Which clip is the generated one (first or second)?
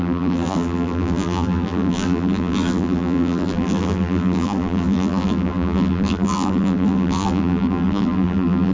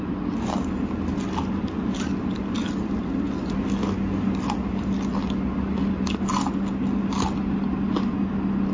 first